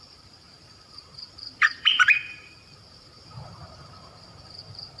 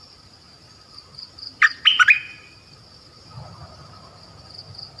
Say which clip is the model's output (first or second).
first